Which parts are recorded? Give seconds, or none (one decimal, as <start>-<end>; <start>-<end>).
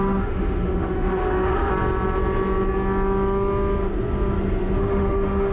1.7-4.8